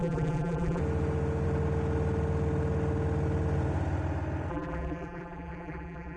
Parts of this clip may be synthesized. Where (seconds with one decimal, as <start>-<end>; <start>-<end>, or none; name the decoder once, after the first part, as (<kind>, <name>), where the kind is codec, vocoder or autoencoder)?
0.0-0.8 (vocoder, BigVGAN v2); 4.5-6.2